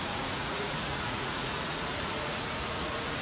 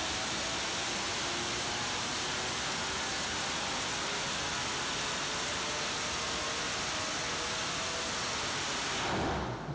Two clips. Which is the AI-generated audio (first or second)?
first